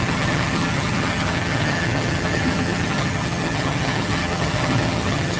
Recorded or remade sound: remade